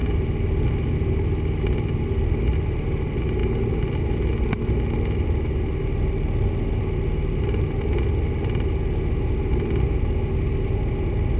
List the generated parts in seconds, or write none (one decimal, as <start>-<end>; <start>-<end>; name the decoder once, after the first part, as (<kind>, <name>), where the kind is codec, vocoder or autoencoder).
none